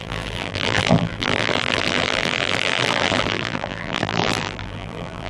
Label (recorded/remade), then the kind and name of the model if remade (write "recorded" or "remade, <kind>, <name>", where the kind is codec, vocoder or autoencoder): remade, vocoder, BigVGAN v2